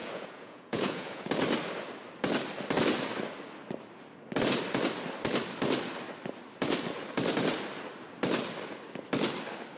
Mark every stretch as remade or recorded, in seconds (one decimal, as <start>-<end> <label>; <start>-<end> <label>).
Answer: 0.0-1.3 remade; 1.3-9.8 recorded